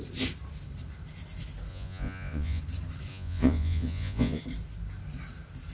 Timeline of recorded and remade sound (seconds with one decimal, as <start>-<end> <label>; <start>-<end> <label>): 0.0-1.7 recorded; 1.7-2.6 remade; 2.6-3.1 recorded; 3.1-4.4 remade; 4.4-5.7 recorded

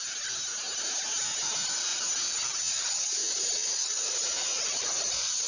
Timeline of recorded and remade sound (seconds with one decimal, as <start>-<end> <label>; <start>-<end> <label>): 0.0-3.9 recorded; 3.9-5.5 remade